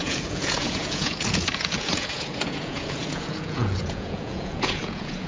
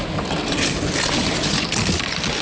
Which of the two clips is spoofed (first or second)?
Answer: first